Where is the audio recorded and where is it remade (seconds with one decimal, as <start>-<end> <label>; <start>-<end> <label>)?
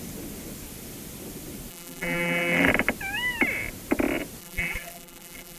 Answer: 0.0-1.7 recorded; 1.7-2.7 remade; 2.7-4.4 recorded; 4.4-5.6 remade